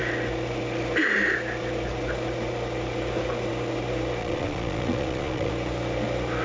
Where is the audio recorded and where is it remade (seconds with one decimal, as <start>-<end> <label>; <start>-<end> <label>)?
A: 0.0-4.2 recorded; 4.2-5.5 remade; 5.5-6.4 recorded

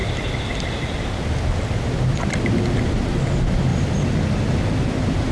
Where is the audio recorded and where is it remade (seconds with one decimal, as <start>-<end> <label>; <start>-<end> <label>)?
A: 0.0-5.3 recorded

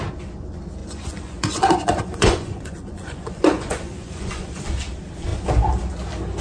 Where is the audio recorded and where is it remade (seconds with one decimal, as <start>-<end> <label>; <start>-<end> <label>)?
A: 0.0-0.8 recorded; 0.8-4.6 remade; 4.6-6.4 recorded

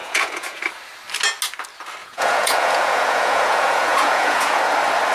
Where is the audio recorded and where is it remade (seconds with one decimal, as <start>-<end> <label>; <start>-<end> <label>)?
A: 0.0-0.6 remade; 0.6-2.0 recorded; 2.0-4.6 remade; 4.6-5.1 recorded

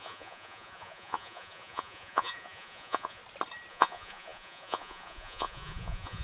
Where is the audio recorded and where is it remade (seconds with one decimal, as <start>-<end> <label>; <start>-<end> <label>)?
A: 0.0-3.2 remade; 3.2-3.7 recorded; 3.7-6.2 remade

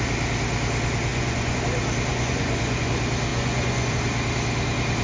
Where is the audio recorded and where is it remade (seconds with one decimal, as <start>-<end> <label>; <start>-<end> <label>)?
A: 0.0-1.1 recorded; 1.1-1.6 remade; 1.6-2.1 recorded; 2.1-2.9 remade; 2.9-3.3 recorded; 3.3-3.9 remade; 3.9-5.0 recorded